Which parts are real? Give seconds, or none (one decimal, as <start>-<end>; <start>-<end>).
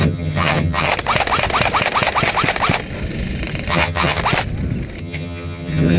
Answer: 0.9-3.7; 4.2-5.0